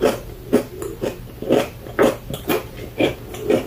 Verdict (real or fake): real